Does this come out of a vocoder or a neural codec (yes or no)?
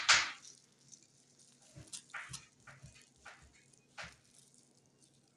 no